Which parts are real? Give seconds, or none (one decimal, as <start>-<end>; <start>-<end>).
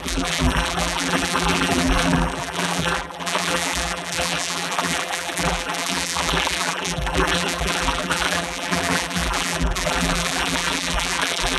none